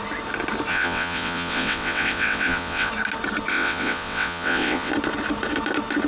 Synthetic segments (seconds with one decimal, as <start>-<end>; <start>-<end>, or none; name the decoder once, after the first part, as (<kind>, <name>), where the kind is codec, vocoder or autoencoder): 0.7-2.9 (vocoder, WaveNeXt); 3.5-4.9